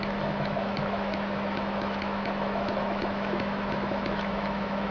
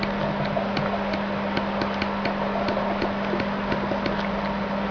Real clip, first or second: second